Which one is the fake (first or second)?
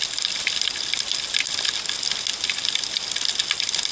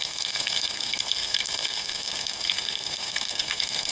second